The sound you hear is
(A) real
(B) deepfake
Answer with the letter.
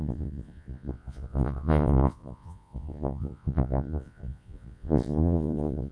B